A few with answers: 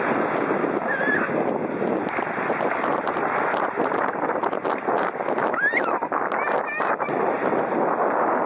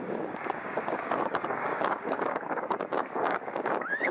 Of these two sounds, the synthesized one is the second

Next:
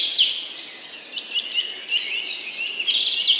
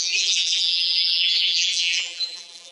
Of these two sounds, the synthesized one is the second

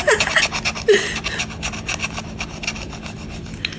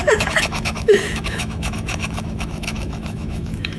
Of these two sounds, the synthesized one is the second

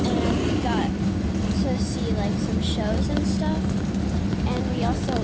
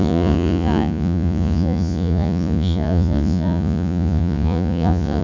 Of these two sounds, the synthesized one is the second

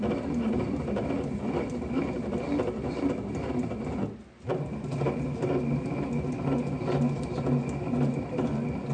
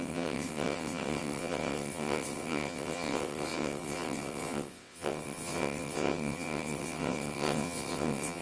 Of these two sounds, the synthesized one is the second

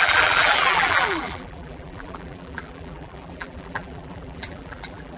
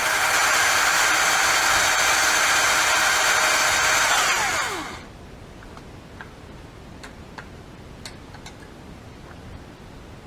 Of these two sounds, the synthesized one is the first